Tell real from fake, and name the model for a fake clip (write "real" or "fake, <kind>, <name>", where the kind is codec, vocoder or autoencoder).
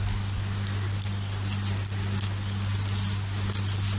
real